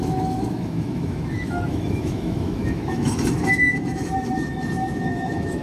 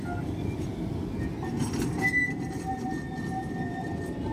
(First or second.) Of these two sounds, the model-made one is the first